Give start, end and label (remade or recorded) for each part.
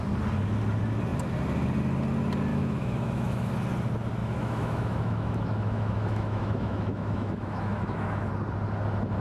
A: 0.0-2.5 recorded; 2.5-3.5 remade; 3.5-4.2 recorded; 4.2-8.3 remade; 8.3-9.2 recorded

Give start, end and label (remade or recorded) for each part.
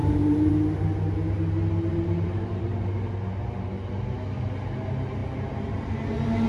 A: 0.0-0.5 remade; 0.5-1.9 recorded; 1.9-2.6 remade; 2.6-5.2 recorded; 5.2-5.9 remade; 5.9-6.5 recorded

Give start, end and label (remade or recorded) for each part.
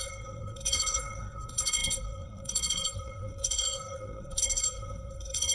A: 0.0-5.5 remade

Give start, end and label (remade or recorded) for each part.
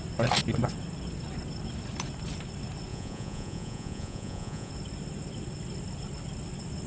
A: 0.0-2.9 recorded; 2.9-4.7 remade; 4.7-6.9 recorded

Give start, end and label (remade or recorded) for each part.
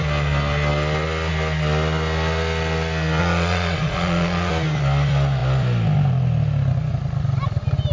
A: 0.0-3.2 recorded; 3.2-4.5 remade; 4.5-7.9 recorded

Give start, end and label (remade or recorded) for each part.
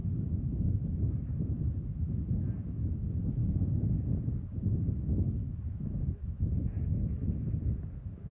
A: 0.0-1.3 remade; 1.3-3.4 recorded; 3.4-3.9 remade; 3.9-5.4 recorded; 5.4-6.4 remade; 6.4-8.3 recorded